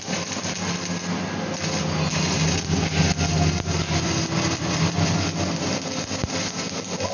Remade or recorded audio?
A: recorded